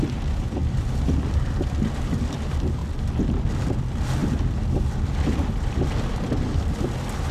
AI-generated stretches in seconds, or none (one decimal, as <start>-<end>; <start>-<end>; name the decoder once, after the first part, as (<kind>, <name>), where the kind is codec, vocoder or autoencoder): 0.0-2.8 (vocoder, BigVGAN v2); 3.4-7.3